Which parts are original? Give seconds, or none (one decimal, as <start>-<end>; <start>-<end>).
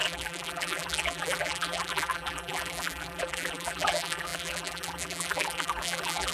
none